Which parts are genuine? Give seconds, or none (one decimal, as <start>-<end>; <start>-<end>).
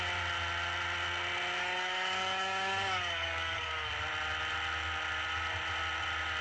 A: 0.0-1.6; 3.9-6.4